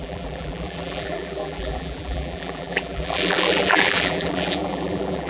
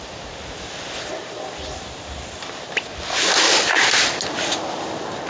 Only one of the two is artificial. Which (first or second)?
first